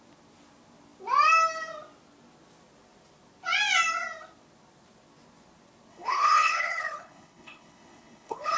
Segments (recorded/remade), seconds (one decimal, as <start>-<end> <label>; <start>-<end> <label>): 0.0-5.9 recorded; 5.9-8.6 remade